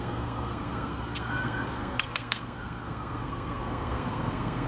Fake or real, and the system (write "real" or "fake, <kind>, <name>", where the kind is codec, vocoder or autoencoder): fake, codec, SNAC